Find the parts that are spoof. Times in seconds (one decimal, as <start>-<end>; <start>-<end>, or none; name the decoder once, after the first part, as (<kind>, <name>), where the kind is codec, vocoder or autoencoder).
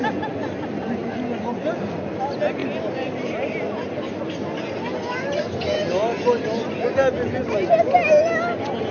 none